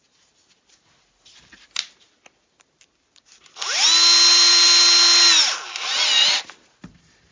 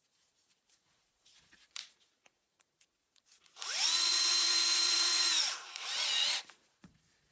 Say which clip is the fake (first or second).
second